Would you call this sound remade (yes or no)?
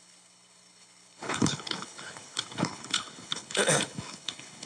yes